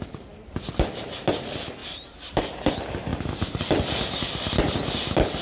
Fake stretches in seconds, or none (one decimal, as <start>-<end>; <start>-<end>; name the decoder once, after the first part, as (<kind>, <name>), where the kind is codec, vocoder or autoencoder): 1.8-2.7 (vocoder, BigVGAN v2); 3.1-3.6